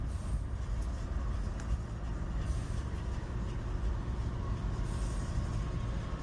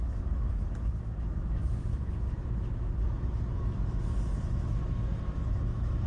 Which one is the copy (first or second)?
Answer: second